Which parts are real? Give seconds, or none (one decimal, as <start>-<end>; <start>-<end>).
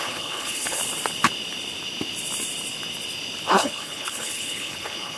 0.8-3.5